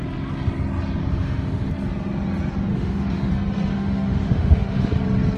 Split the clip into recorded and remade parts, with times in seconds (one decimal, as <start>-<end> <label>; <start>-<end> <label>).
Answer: 0.0-1.0 recorded; 1.0-1.7 remade; 1.7-2.7 recorded; 2.7-3.3 remade; 3.3-3.7 recorded; 3.7-4.9 remade; 4.9-5.4 recorded